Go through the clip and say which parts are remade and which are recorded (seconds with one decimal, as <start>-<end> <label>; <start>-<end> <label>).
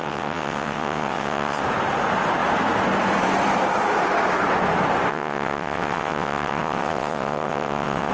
0.0-1.6 remade; 1.6-5.1 recorded; 5.1-8.1 remade